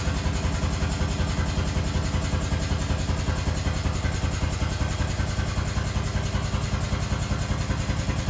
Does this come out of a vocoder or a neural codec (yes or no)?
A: no